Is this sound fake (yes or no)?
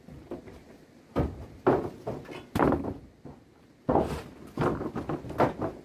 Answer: no